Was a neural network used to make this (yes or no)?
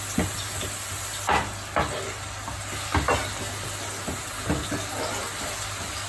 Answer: no